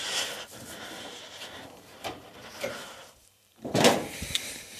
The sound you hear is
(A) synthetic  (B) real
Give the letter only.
A